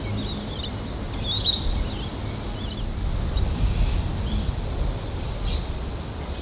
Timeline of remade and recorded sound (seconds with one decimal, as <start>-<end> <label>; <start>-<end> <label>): 0.0-6.4 recorded